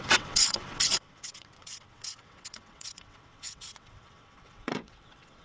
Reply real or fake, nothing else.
fake